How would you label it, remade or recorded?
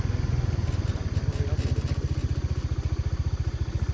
recorded